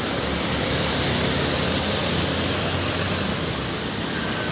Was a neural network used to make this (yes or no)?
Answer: no